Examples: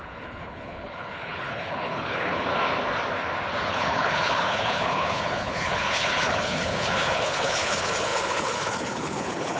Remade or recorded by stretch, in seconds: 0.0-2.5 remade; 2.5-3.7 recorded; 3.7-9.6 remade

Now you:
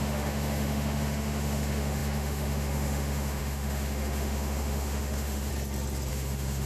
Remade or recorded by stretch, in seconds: 0.0-5.5 remade; 5.5-6.1 recorded; 6.1-6.7 remade

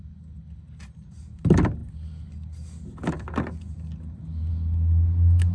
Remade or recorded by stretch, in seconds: 0.0-5.5 recorded

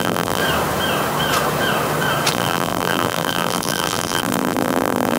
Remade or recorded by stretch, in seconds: 0.0-0.4 remade; 0.4-2.3 recorded; 2.3-5.2 remade

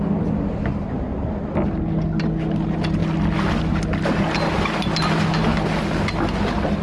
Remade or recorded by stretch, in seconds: 0.0-6.8 recorded

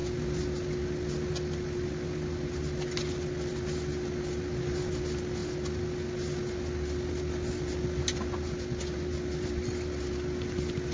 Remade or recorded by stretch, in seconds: 0.0-10.9 recorded

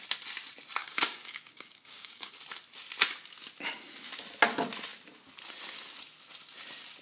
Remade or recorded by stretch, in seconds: 0.0-0.8 recorded; 0.8-2.4 remade; 2.4-7.0 recorded